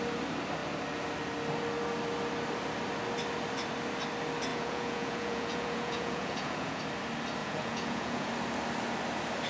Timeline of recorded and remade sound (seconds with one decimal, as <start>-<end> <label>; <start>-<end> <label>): 0.0-4.5 recorded; 4.5-6.8 remade; 6.8-7.4 recorded; 7.4-8.3 remade; 8.3-9.5 recorded

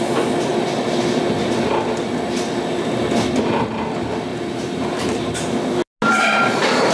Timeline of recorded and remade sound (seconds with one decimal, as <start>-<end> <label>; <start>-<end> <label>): 0.0-4.3 recorded; 4.3-5.6 remade; 5.6-6.9 recorded